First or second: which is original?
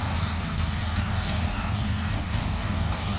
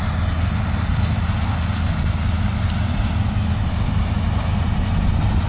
second